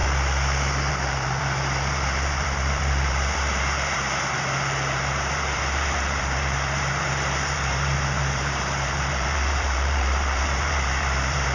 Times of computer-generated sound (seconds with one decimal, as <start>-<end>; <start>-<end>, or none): 0.9-11.5